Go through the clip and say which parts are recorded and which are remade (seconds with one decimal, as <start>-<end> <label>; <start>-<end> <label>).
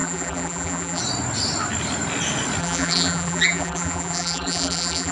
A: 0.0-1.0 remade; 1.0-2.6 recorded; 2.6-5.1 remade